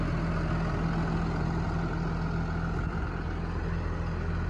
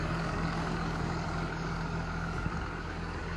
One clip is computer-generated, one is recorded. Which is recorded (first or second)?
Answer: first